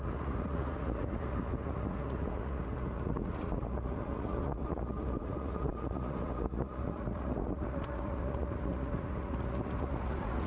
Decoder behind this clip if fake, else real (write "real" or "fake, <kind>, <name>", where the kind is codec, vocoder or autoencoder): fake, vocoder, Vocos